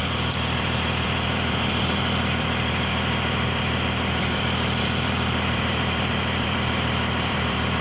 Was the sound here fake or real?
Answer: fake